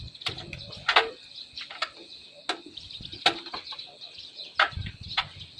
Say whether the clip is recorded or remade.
recorded